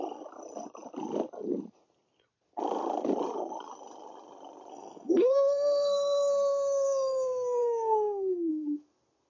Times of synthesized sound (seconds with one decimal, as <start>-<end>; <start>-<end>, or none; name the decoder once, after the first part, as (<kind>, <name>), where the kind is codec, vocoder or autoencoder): 4.7-8.5 (codec, SNAC)